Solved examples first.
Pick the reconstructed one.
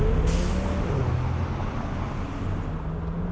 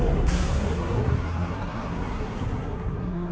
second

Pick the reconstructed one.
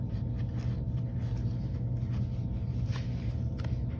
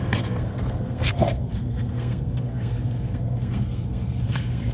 second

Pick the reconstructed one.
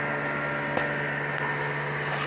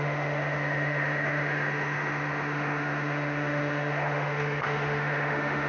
second